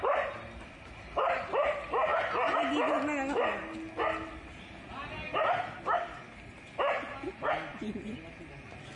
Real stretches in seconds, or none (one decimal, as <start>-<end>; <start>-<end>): 0.0-7.7; 8.2-9.0